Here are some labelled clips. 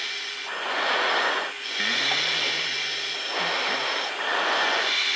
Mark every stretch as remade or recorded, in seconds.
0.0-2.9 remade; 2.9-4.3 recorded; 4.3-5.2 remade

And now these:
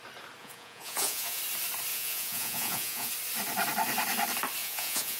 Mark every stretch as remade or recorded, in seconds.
0.0-0.4 recorded; 0.4-1.4 remade; 1.4-1.9 recorded; 1.9-3.1 remade; 3.1-4.6 recorded; 4.6-5.2 remade

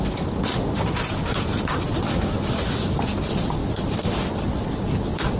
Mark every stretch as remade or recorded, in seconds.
0.0-5.4 recorded

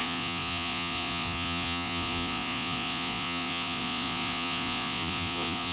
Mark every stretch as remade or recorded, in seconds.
0.0-5.7 remade

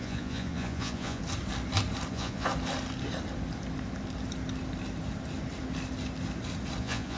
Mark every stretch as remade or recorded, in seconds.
0.0-1.2 remade; 1.2-2.1 recorded; 2.1-2.5 remade; 2.5-6.8 recorded; 6.8-7.2 remade

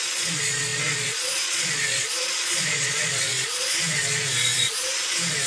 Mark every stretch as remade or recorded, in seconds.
0.0-5.5 remade

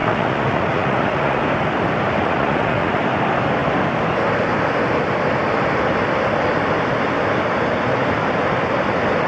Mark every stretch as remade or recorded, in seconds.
0.0-1.4 remade; 1.4-2.2 recorded; 2.2-3.0 remade; 3.0-9.3 recorded